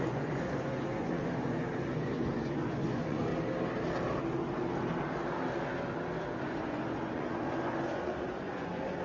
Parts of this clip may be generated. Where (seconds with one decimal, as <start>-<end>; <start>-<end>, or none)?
0.0-3.3; 6.4-9.0